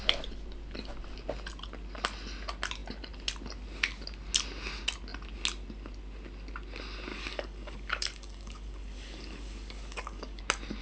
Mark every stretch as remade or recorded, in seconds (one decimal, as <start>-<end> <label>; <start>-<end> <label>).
0.0-7.1 recorded; 7.1-10.4 remade; 10.4-10.8 recorded